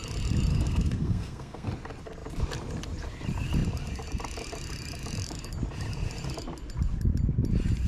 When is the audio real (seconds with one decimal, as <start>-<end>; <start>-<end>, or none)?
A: 0.0-0.5; 1.7-7.9